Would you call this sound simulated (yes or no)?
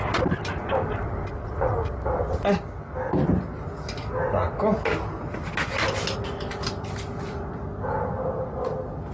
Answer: no